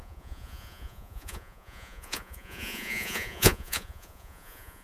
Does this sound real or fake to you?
fake